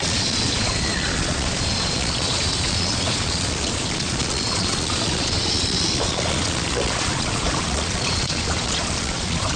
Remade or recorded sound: remade